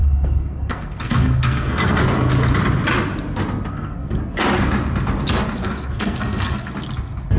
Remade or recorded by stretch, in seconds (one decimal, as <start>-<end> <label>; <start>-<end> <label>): 0.0-2.0 remade; 2.0-3.7 recorded; 3.7-4.2 remade; 4.2-5.6 recorded; 5.6-6.7 remade; 6.7-7.4 recorded